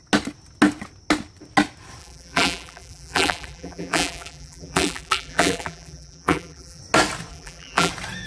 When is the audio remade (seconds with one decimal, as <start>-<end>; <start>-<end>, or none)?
2.0-6.8; 7.3-7.9